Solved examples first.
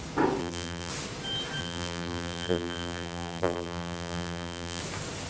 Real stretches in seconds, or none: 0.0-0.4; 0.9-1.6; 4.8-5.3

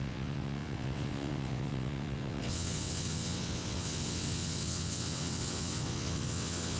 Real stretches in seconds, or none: none

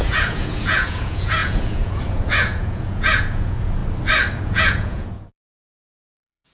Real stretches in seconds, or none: 3.8-4.4